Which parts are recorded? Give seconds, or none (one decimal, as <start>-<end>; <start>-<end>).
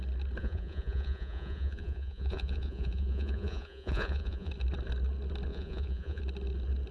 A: 0.0-0.4; 4.5-5.5; 6.2-6.9